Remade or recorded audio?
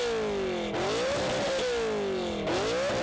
recorded